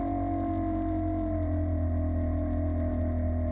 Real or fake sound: real